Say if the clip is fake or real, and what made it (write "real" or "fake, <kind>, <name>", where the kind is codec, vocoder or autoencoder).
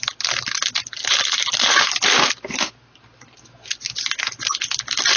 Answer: real